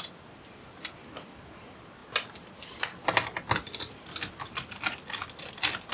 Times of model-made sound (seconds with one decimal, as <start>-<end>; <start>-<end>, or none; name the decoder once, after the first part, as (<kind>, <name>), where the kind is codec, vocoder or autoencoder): none